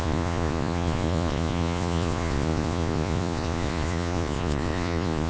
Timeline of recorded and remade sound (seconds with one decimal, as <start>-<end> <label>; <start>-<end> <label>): 0.0-5.3 remade